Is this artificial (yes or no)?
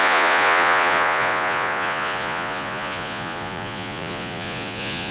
yes